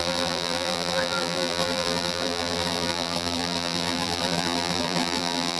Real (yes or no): no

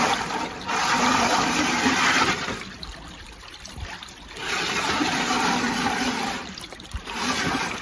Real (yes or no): yes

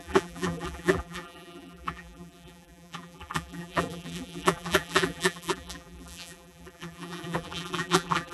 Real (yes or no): no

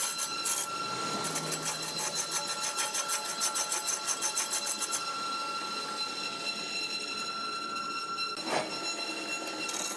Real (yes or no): yes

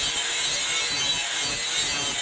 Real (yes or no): yes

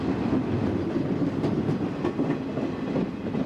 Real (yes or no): yes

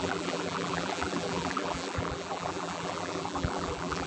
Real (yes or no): no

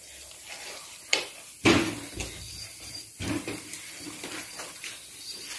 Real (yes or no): yes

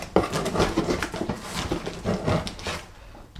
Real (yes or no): yes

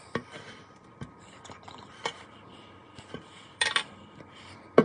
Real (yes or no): no